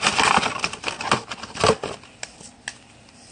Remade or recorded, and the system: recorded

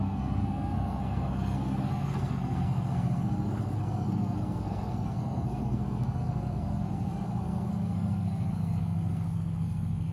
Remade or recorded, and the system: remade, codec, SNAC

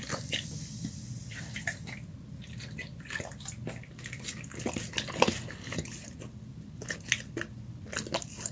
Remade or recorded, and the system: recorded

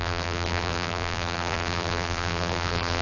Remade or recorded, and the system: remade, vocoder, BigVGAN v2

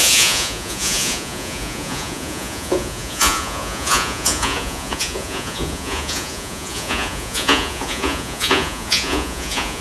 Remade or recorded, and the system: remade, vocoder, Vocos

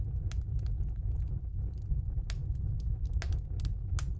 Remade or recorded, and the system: recorded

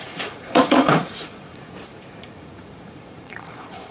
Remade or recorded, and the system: remade, vocoder, Vocos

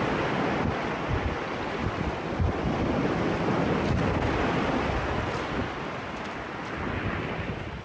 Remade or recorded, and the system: recorded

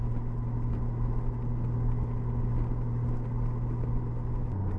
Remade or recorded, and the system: recorded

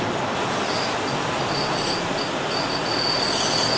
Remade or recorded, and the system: recorded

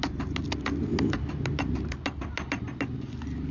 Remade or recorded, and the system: recorded